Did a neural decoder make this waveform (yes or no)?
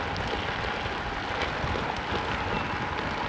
no